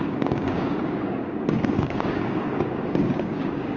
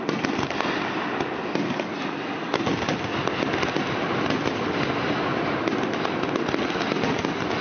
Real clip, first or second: second